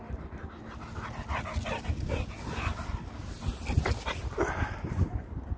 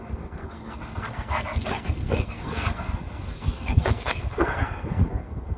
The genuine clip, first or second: first